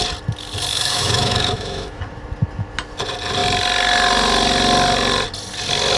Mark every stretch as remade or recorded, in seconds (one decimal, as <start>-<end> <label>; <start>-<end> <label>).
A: 0.0-0.7 recorded; 0.7-2.0 remade; 2.0-6.0 recorded